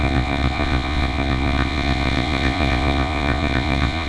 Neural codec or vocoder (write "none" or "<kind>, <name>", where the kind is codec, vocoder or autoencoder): vocoder, Vocos